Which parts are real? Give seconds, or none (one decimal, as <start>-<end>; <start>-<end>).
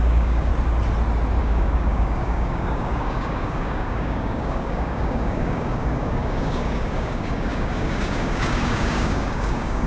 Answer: 0.5-1.4